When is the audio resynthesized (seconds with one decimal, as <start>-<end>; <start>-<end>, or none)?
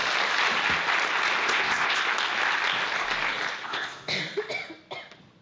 1.4-2.0; 3.7-4.2